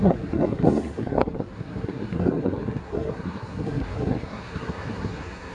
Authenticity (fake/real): fake